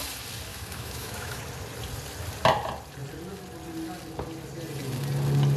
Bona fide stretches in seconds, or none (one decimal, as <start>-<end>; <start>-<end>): 0.0-0.5; 1.4-5.6